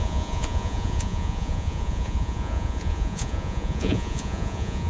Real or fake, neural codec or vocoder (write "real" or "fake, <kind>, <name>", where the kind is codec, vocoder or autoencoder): fake, vocoder, Vocos